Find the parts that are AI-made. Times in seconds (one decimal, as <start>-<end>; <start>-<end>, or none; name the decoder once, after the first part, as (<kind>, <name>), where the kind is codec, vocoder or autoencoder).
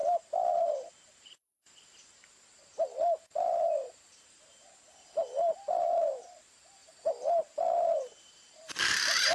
0.5-9.3 (vocoder, BigVGAN v2)